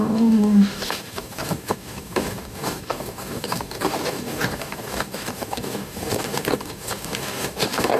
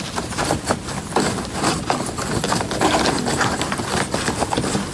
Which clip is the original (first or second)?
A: second